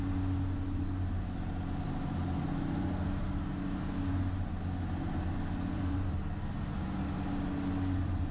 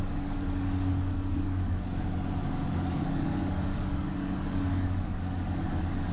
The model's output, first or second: second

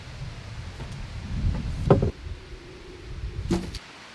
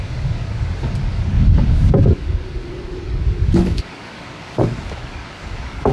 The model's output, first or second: second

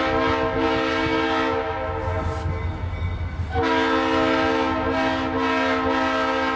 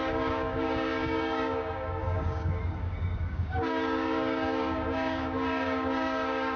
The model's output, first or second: second